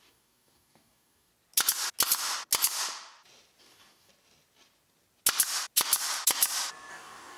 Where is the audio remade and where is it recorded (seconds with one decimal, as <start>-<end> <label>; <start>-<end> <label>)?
0.0-1.3 remade; 1.3-3.6 recorded; 3.6-4.1 remade; 4.1-6.9 recorded; 6.9-7.4 remade

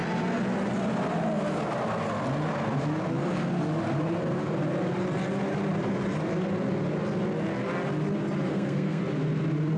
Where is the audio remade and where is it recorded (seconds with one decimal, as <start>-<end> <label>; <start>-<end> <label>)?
0.0-8.5 recorded; 8.5-9.0 remade; 9.0-9.8 recorded

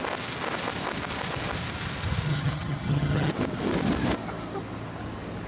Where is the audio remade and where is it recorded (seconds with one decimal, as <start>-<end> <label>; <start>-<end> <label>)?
0.0-2.3 recorded; 2.3-3.3 remade; 3.3-5.5 recorded

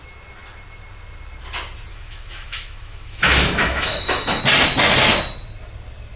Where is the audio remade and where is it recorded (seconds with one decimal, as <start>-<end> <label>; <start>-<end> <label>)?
0.0-1.9 recorded; 1.9-4.4 remade; 4.4-6.2 recorded

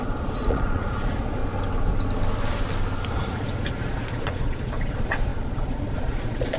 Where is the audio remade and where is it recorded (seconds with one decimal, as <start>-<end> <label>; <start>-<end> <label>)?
0.0-1.4 remade; 1.4-3.1 recorded; 3.1-6.6 remade

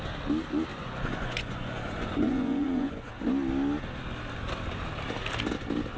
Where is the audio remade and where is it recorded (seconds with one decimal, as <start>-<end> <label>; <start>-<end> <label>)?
0.0-0.7 recorded; 0.7-3.1 remade; 3.1-6.0 recorded

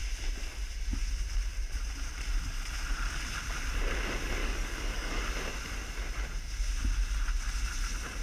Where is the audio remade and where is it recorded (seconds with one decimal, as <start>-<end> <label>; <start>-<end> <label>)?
0.0-4.4 recorded; 4.4-5.2 remade; 5.2-8.2 recorded